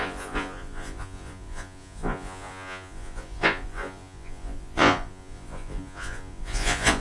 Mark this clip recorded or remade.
remade